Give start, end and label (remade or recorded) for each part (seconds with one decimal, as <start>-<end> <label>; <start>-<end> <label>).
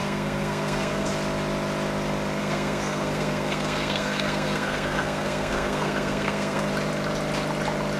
0.0-1.1 remade; 1.1-2.4 recorded; 2.4-6.7 remade; 6.7-8.0 recorded